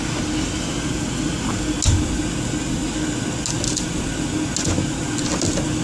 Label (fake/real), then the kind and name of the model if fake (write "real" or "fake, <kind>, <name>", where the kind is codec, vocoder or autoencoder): real